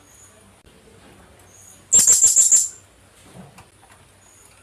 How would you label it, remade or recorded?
recorded